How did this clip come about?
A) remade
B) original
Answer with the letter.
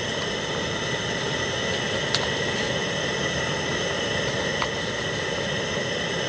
B